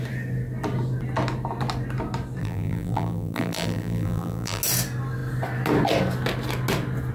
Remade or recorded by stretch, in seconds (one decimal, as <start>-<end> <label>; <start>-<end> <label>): 0.0-2.4 recorded; 2.4-4.6 remade; 4.6-7.1 recorded